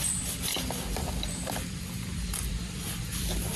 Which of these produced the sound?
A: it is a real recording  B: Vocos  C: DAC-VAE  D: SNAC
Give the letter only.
A